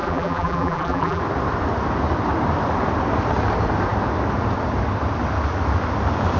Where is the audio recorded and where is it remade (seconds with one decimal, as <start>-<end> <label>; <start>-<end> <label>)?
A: 0.0-1.2 remade; 1.2-6.4 recorded